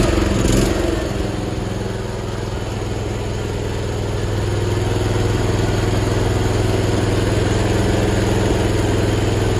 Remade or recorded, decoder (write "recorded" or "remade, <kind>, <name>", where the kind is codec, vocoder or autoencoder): recorded